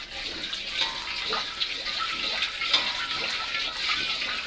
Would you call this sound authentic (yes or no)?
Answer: yes